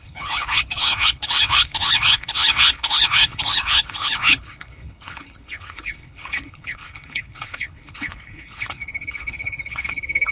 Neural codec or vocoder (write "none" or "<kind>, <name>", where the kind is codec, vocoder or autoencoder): codec, HILCodec